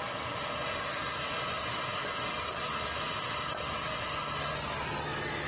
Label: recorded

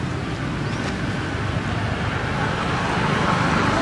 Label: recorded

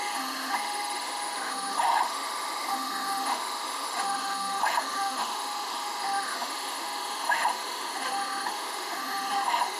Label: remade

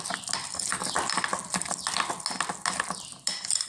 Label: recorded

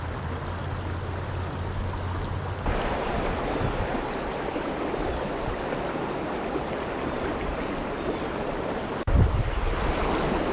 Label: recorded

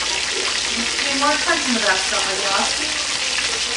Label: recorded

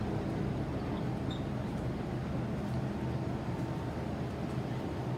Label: recorded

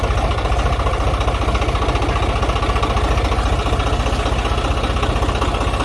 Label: recorded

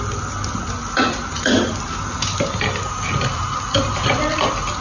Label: recorded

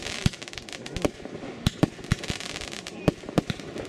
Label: recorded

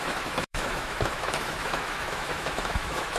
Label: remade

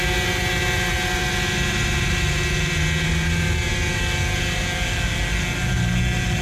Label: recorded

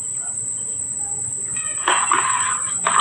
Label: recorded